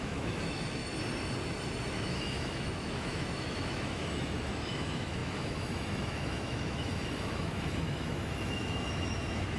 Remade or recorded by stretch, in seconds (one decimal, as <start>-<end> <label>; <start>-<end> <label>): 0.0-0.8 remade; 0.8-1.9 recorded; 1.9-9.6 remade